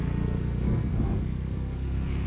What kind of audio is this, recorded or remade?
remade